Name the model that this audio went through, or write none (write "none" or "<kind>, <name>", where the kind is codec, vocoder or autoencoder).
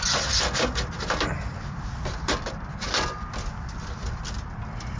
none